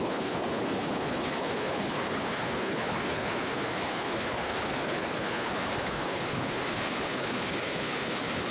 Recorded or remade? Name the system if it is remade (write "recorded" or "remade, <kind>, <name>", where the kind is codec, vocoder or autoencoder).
remade, codec, HILCodec